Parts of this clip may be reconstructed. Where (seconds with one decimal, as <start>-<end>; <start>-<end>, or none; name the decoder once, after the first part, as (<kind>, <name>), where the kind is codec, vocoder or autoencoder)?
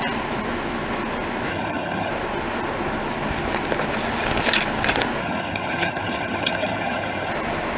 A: 1.5-2.1 (vocoder, HiFi-GAN); 5.2-7.3